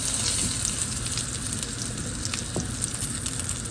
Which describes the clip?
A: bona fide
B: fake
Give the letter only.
A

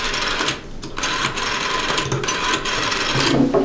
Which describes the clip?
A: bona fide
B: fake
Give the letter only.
A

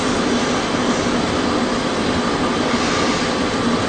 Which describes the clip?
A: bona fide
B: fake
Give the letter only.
A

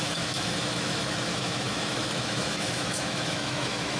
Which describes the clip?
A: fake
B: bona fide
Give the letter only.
A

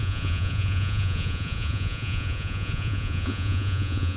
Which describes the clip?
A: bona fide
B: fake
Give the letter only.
B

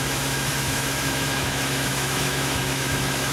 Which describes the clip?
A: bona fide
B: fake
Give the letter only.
B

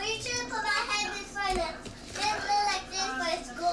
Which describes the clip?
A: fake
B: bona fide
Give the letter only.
B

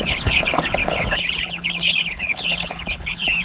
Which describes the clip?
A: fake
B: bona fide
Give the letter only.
A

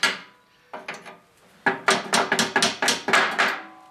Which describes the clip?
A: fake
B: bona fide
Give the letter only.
B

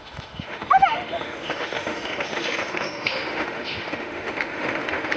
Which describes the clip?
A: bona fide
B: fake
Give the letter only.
B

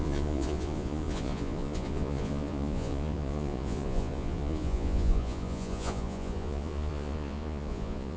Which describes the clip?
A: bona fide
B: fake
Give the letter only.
B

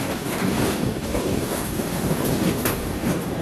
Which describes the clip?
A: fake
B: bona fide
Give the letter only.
A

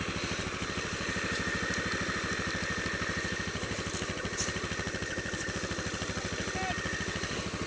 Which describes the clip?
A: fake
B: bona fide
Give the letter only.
B